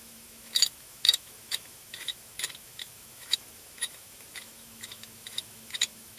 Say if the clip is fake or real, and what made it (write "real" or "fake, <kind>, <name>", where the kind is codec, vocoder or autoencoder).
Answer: fake, autoencoder, DAC-VAE